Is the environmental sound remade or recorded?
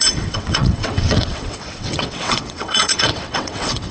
remade